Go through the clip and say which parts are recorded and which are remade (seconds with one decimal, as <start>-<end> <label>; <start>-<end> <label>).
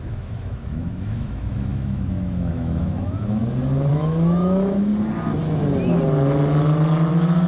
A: 0.0-3.4 remade; 3.4-3.9 recorded; 3.9-4.9 remade; 4.9-7.1 recorded; 7.1-7.5 remade